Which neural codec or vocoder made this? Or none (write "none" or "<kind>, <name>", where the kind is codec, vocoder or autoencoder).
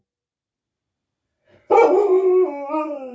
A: none